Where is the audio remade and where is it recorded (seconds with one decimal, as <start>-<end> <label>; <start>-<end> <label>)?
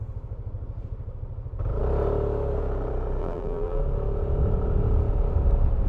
0.0-3.2 recorded; 3.2-3.8 remade; 3.8-5.9 recorded